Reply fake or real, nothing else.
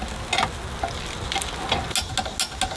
real